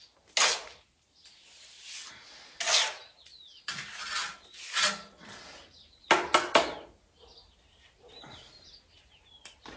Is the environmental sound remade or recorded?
recorded